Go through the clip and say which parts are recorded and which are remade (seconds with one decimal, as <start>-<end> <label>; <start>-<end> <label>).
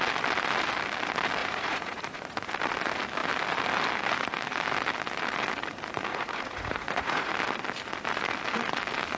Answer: 0.0-1.4 recorded; 1.4-2.5 remade; 2.5-6.1 recorded; 6.1-7.3 remade; 7.3-9.2 recorded